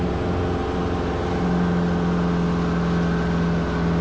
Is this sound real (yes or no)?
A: yes